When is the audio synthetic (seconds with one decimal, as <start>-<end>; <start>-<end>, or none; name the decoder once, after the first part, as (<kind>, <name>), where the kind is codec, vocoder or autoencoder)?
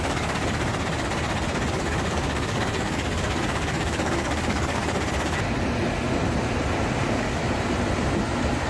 0.0-0.7 (codec, DAC); 1.7-4.8; 7.0-7.4